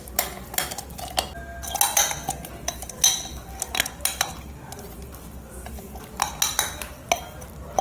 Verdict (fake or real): real